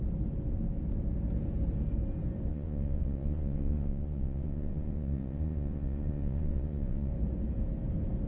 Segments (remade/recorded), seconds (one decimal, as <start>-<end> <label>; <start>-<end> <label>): 0.0-2.5 recorded; 2.5-7.1 remade; 7.1-8.3 recorded